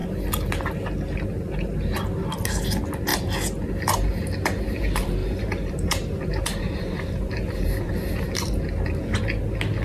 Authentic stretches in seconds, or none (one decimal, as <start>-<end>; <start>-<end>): 0.0-5.2; 7.9-9.8